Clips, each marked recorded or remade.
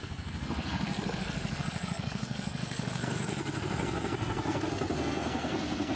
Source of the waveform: remade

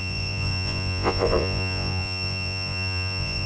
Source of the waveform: remade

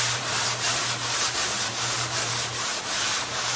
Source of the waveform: remade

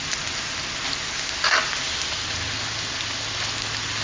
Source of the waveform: recorded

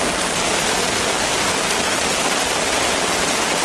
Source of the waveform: recorded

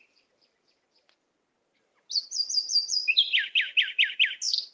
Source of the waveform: recorded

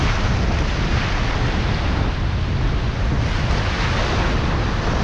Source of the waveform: recorded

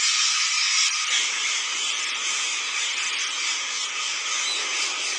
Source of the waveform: recorded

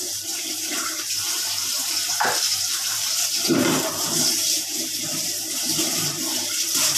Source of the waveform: remade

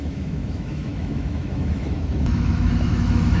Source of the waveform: remade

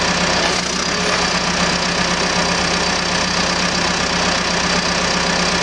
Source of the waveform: recorded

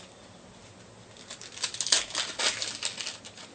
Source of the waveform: recorded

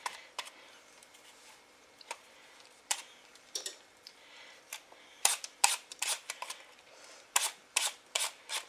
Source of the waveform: remade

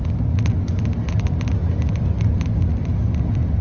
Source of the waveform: recorded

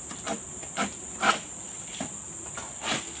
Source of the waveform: recorded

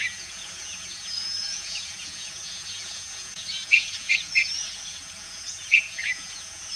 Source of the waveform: remade